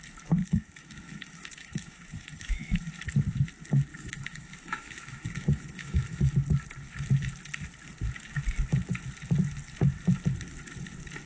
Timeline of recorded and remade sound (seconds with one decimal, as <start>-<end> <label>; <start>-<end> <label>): 0.0-0.4 recorded; 0.4-2.9 remade; 2.9-3.9 recorded; 3.9-6.3 remade; 6.3-11.3 recorded